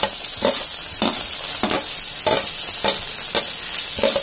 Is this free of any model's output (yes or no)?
yes